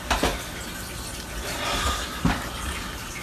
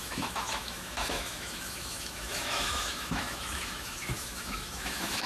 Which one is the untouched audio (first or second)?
first